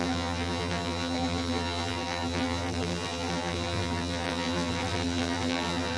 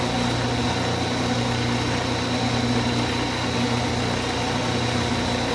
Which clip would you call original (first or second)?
second